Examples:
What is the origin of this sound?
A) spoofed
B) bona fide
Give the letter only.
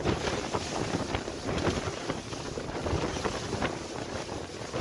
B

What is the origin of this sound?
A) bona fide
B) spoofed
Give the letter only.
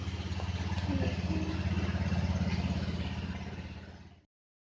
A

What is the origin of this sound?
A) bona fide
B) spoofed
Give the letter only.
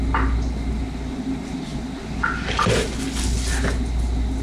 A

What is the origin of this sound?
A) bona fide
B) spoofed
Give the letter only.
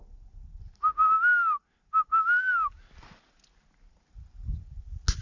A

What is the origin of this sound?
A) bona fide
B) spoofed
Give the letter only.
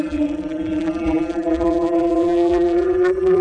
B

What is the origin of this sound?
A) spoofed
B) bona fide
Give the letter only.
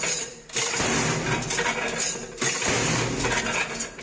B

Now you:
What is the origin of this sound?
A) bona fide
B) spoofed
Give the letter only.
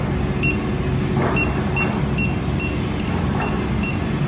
A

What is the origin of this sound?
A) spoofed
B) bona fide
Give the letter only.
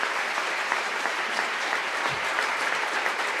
A